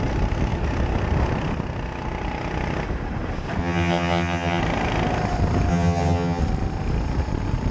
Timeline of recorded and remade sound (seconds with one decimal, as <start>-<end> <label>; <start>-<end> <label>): 0.0-3.6 recorded; 3.6-4.6 remade; 4.6-5.7 recorded; 5.7-6.4 remade; 6.4-7.7 recorded